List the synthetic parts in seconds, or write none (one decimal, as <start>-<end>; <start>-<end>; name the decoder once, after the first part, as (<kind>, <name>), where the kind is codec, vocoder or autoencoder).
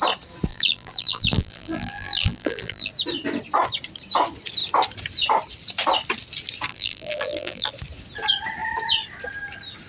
0.5-2.9 (vocoder, BigVGAN v2); 6.7-7.7